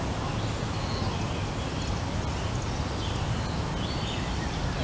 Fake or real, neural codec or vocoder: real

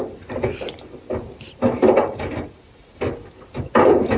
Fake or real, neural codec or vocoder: real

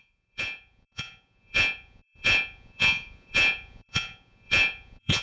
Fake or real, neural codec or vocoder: fake, vocoder, Vocos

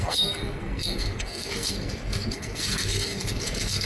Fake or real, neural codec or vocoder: fake, codec, SNAC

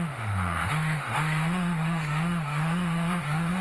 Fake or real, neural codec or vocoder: fake, autoencoder, DAC-VAE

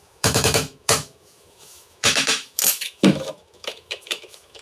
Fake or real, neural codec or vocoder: fake, autoencoder, DAC-VAE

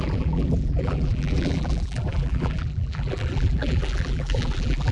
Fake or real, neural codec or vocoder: fake, vocoder, BigVGAN v2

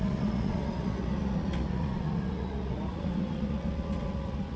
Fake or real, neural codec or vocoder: fake, vocoder, Vocos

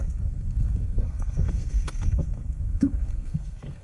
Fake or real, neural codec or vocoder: fake, codec, SNAC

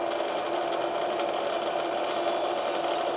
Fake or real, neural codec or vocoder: real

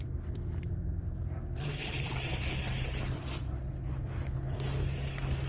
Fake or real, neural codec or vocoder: real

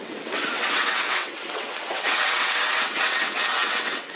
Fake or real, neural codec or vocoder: fake, vocoder, WaveNeXt